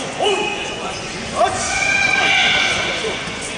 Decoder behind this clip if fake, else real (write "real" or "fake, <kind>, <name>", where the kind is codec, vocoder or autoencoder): fake, vocoder, Vocos